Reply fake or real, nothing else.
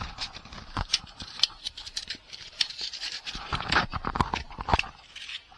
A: fake